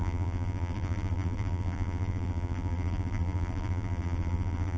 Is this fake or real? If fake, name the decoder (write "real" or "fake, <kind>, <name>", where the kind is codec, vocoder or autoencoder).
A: fake, vocoder, BigVGAN v2